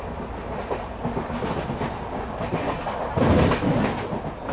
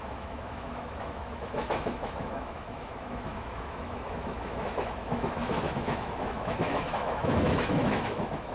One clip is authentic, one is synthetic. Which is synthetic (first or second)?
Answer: second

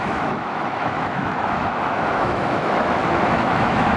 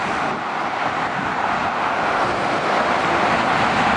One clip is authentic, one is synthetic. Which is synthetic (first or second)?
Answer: first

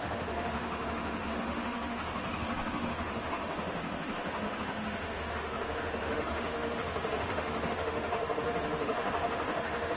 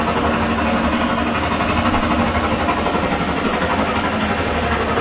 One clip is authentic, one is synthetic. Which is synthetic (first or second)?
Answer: first